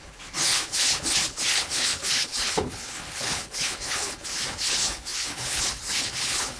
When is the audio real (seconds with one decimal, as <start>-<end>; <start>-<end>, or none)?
none